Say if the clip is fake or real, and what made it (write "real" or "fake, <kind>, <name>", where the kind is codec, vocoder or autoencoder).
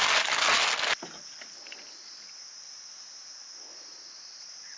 real